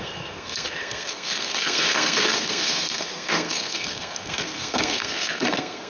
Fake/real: fake